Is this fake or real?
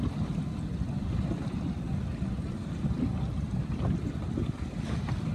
real